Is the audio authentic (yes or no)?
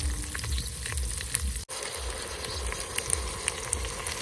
yes